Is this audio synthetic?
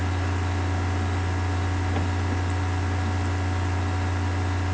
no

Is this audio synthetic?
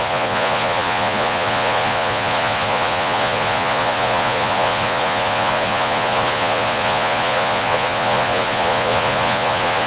yes